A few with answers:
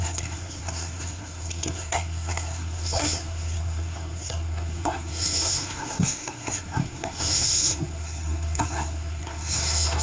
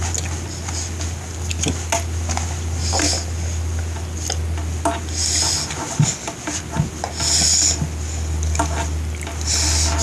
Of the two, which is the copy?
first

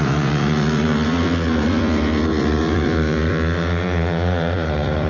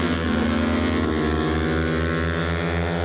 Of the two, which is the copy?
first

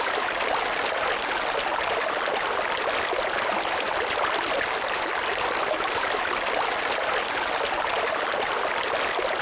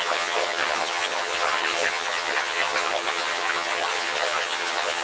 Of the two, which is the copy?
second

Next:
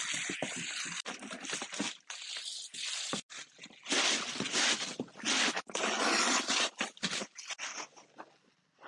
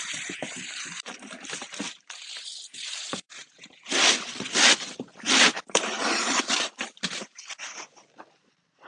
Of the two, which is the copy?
second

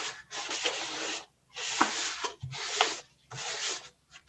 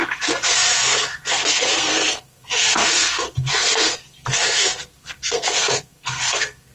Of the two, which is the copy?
second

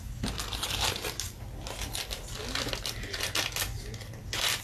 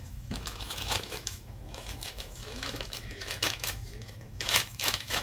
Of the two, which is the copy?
second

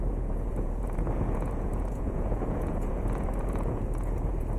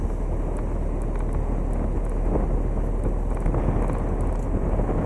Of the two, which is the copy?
first